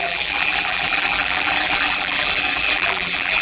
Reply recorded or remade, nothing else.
remade